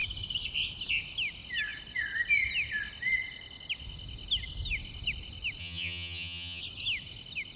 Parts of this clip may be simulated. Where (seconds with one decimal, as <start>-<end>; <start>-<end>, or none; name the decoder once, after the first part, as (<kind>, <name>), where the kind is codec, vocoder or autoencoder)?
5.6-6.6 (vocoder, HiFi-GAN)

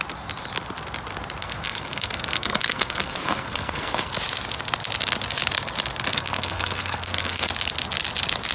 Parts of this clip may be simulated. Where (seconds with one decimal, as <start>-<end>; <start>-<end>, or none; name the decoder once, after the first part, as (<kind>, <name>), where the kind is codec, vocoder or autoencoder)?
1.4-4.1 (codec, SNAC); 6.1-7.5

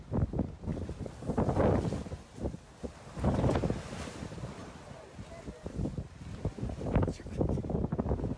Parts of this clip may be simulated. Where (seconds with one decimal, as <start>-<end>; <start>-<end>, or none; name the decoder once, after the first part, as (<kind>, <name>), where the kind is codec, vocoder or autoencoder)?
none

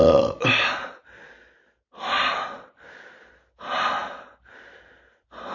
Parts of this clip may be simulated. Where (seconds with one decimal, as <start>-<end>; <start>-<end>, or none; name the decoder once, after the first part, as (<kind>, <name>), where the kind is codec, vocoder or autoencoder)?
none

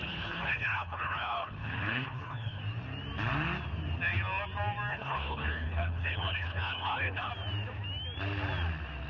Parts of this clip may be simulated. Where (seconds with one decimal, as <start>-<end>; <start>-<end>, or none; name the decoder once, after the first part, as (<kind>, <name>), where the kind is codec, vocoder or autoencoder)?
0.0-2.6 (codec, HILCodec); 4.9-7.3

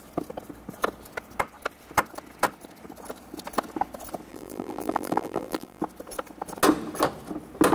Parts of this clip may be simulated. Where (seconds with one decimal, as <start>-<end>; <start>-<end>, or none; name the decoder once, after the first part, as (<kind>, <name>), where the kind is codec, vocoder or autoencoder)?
4.3-5.8 (vocoder, BigVGAN v2)